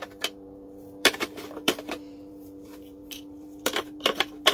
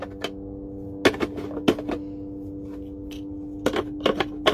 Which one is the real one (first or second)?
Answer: second